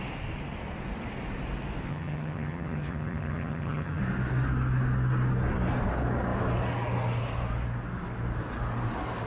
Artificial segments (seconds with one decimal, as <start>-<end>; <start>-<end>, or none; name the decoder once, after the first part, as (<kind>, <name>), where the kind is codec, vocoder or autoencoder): 1.9-4.0 (vocoder, HiFi-GAN)